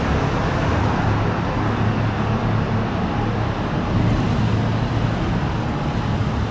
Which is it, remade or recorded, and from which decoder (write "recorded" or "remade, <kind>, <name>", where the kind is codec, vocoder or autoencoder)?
recorded